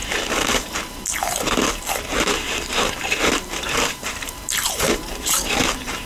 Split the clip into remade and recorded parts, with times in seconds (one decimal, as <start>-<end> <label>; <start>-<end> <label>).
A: 0.0-2.1 recorded; 2.1-6.1 remade